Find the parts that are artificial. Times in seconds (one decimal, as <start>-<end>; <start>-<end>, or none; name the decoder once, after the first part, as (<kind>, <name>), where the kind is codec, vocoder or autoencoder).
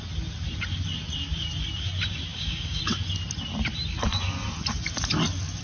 2.3-2.8 (codec, DAC)